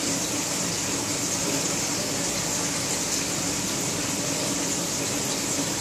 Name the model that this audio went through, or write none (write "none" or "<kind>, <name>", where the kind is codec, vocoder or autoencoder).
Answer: none